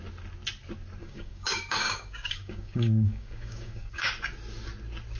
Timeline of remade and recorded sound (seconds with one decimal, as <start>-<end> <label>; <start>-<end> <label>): 0.0-1.0 recorded; 1.0-4.1 remade; 4.1-5.2 recorded